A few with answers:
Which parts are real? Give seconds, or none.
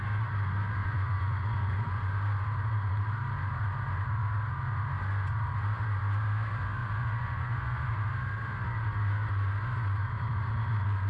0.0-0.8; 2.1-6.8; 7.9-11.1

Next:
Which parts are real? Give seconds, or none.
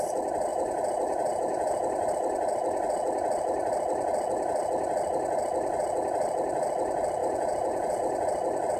0.0-0.5; 2.1-7.2; 8.0-8.8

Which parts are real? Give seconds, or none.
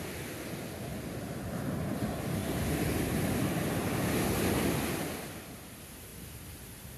0.0-7.0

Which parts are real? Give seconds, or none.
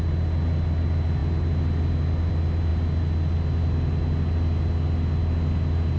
0.0-6.0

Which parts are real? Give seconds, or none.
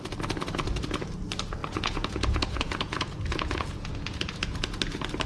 0.0-1.6; 4.8-5.3